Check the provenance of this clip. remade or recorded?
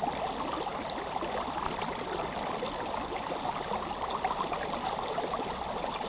recorded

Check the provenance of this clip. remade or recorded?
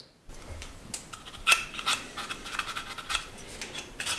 recorded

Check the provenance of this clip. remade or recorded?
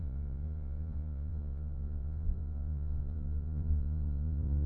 remade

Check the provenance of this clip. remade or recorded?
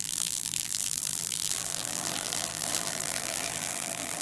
remade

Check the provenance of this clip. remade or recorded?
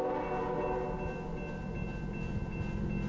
recorded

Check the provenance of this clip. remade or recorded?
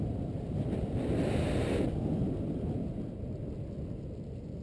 recorded